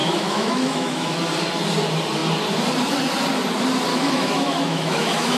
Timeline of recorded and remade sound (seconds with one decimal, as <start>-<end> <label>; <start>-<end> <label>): 0.0-1.2 remade; 1.2-3.9 recorded; 3.9-5.4 remade